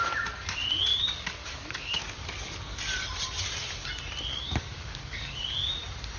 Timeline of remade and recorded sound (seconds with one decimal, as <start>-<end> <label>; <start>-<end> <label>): 0.0-0.9 recorded; 0.9-2.8 remade; 2.8-4.3 recorded; 4.3-5.4 remade; 5.4-6.2 recorded

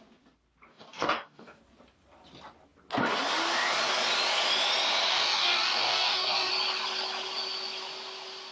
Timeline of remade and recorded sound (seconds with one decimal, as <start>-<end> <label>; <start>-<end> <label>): 0.0-0.7 recorded; 0.7-1.6 remade; 1.6-5.1 recorded; 5.1-6.5 remade; 6.5-8.5 recorded

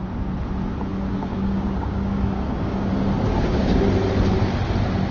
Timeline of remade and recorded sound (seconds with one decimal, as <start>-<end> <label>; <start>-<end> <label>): 0.0-0.9 recorded; 0.9-2.9 remade; 2.9-3.3 recorded; 3.3-3.8 remade; 3.8-5.1 recorded

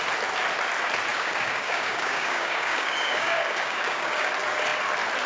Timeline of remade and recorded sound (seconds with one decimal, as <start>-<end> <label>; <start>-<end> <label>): 0.0-1.1 recorded; 1.1-4.3 remade; 4.3-5.3 recorded